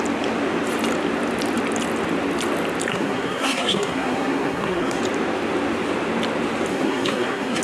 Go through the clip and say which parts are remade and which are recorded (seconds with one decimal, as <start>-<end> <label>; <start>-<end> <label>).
0.0-2.9 recorded; 2.9-5.0 remade; 5.0-6.7 recorded; 6.7-7.6 remade